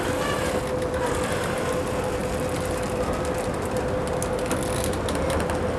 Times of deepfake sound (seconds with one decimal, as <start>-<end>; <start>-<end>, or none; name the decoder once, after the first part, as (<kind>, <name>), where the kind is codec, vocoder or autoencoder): none